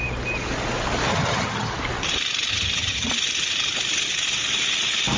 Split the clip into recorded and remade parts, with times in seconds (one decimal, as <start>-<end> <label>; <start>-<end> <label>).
0.0-1.1 recorded; 1.1-1.7 remade; 1.7-2.5 recorded; 2.5-3.1 remade; 3.1-5.2 recorded